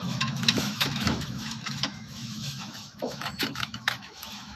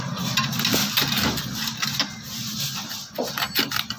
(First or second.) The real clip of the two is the second